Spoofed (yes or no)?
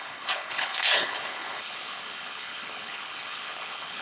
yes